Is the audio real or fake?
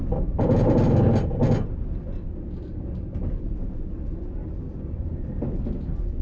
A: real